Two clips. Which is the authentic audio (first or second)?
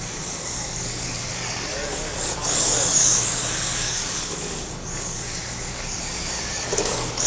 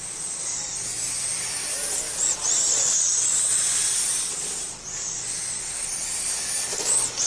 second